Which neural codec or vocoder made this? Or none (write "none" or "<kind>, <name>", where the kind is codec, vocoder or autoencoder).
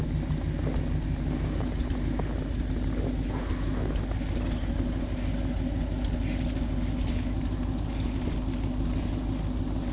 none